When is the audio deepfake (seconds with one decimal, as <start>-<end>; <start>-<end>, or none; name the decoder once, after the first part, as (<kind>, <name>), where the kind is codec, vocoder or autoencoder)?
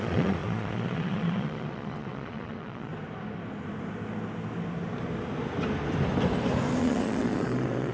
0.0-2.9 (vocoder, Vocos); 6.8-7.9